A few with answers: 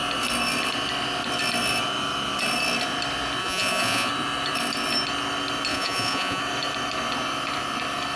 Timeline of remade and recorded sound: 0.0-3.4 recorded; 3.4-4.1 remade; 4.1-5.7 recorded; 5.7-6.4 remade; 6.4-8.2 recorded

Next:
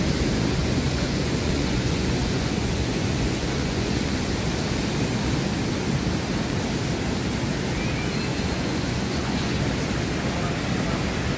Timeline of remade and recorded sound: 0.0-0.6 recorded; 0.6-4.3 remade; 4.3-8.3 recorded; 8.3-9.6 remade; 9.6-11.4 recorded

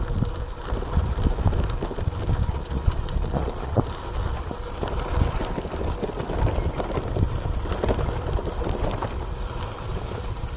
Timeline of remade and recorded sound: 0.0-2.4 recorded; 2.4-3.8 remade; 3.8-10.6 recorded